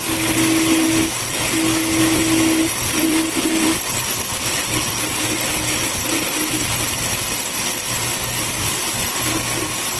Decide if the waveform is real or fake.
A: real